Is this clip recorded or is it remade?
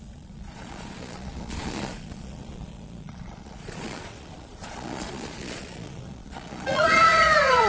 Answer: remade